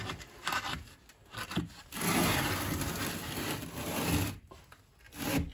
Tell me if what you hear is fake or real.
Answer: real